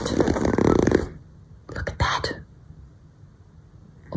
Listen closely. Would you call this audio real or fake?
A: fake